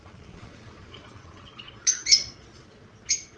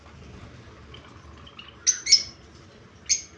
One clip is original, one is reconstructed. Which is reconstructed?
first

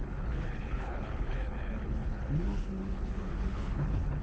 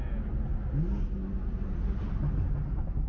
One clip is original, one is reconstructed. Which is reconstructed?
first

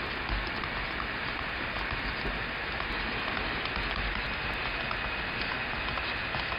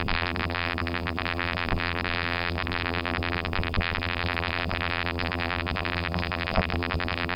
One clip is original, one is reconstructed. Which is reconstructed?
second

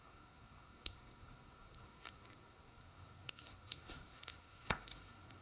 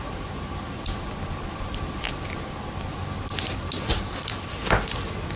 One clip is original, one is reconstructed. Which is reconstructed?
first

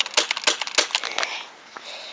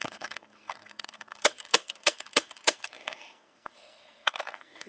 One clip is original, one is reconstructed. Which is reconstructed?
second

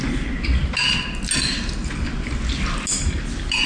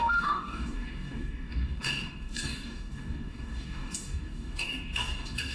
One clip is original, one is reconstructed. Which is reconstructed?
second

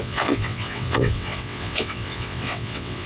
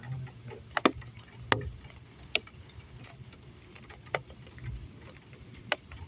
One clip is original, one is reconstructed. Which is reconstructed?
first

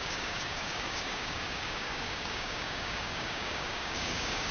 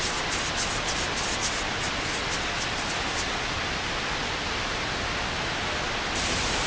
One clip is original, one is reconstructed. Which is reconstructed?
first